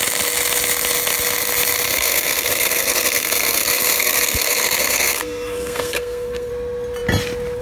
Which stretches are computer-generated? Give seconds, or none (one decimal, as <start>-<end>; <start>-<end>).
1.9-6.5